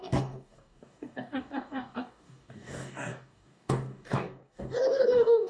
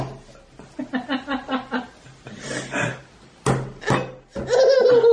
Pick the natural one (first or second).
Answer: second